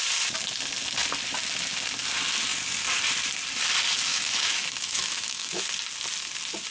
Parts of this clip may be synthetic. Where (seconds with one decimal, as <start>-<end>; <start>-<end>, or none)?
4.1-5.6